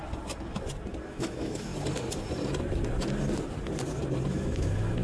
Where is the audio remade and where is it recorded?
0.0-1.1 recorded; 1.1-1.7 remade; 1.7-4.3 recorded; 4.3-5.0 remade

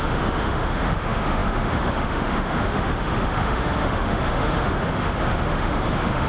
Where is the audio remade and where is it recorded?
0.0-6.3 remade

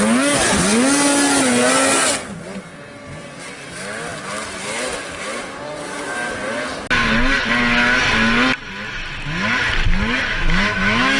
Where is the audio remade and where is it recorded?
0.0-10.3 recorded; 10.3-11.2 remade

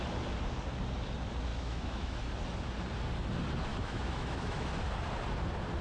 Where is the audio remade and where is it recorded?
0.0-1.5 recorded; 1.5-2.3 remade; 2.3-3.7 recorded; 3.7-4.7 remade; 4.7-5.8 recorded